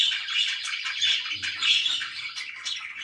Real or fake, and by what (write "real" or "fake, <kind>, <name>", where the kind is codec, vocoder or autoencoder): real